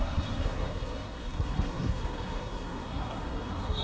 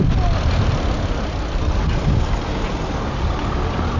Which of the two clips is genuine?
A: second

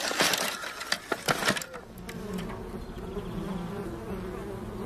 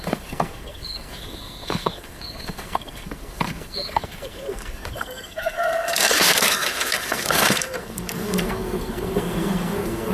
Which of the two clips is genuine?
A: first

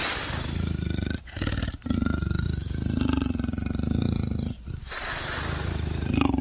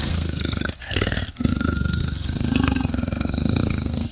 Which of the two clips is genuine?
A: first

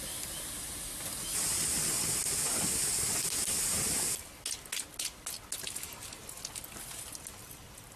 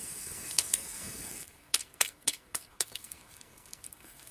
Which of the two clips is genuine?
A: first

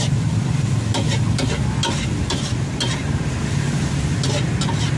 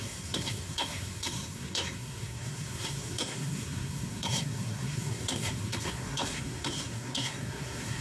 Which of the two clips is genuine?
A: first